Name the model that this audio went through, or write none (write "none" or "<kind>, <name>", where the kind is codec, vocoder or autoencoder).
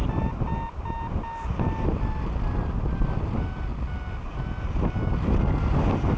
none